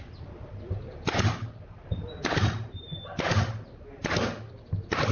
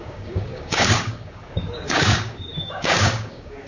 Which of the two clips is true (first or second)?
first